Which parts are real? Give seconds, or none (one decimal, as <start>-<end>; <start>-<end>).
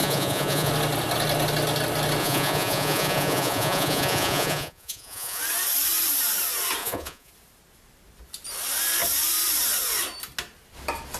0.7-2.2; 5.4-6.8; 7.3-11.2